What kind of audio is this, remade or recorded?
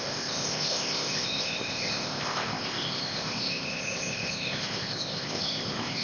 remade